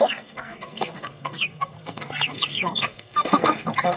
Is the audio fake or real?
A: fake